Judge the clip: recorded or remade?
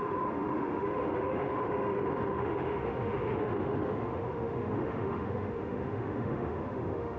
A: remade